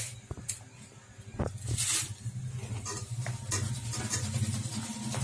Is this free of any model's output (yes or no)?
yes